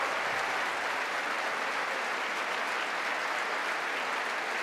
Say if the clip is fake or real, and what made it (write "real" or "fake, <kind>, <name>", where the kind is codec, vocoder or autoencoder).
real